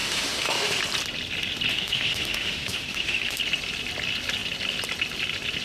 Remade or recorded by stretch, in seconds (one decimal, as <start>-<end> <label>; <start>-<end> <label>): 0.0-0.8 remade; 0.8-1.7 recorded; 1.7-3.4 remade; 3.4-5.6 recorded